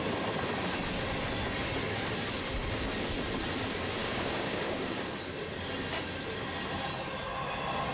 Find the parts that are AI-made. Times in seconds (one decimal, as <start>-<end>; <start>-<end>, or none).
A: 4.0-5.1